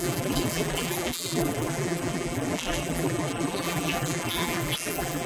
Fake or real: fake